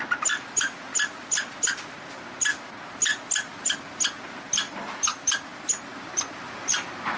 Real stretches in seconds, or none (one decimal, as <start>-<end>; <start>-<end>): 0.0-7.2